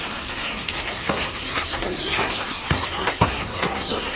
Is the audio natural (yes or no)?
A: no